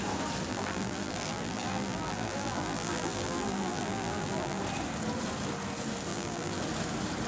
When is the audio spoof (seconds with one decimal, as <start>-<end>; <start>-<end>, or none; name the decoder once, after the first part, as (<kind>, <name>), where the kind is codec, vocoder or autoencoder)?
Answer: 0.5-4.6 (vocoder, BigVGAN v2); 6.1-6.6